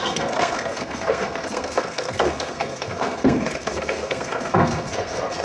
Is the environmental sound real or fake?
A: fake